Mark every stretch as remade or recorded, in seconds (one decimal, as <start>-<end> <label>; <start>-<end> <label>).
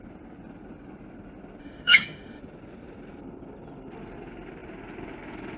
0.0-1.6 recorded; 1.6-2.4 remade; 2.4-5.6 recorded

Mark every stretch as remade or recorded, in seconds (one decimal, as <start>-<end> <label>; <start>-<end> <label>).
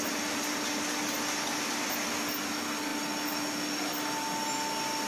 0.0-5.1 recorded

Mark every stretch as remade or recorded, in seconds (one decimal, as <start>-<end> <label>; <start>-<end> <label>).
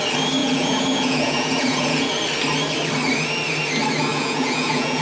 0.0-0.4 recorded; 0.4-2.1 remade; 2.1-4.1 recorded; 4.1-5.0 remade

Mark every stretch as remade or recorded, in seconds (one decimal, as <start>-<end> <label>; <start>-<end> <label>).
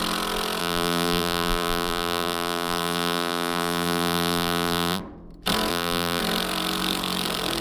0.0-0.6 recorded; 0.6-5.0 remade; 5.0-5.7 recorded; 5.7-6.2 remade; 6.2-7.6 recorded